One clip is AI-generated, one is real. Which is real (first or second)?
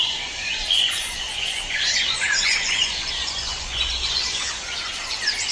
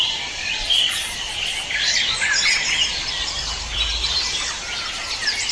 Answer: second